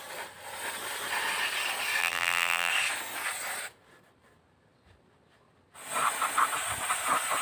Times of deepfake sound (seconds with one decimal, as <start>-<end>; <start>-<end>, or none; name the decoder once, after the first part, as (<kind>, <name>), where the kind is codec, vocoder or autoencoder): 2.0-2.7 (vocoder, BigVGAN v2)